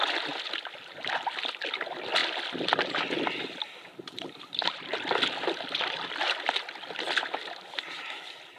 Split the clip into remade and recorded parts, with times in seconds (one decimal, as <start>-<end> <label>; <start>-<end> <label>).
0.0-8.6 recorded